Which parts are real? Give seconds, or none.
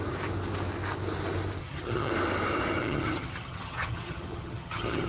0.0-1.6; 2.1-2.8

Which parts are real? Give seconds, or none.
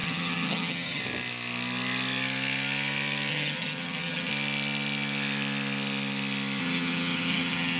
1.0-3.3; 4.3-6.6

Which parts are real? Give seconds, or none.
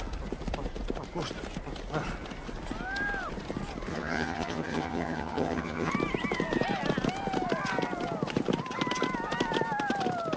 0.0-3.9; 5.9-10.4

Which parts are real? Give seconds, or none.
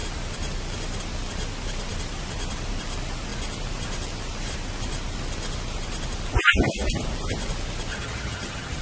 0.0-7.9